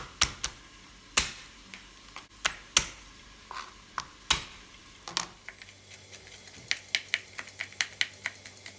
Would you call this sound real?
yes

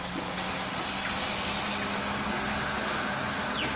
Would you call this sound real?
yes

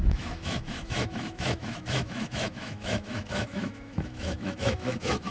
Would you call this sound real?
no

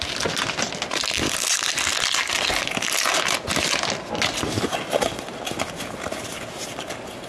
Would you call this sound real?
yes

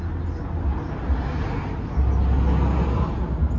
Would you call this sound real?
yes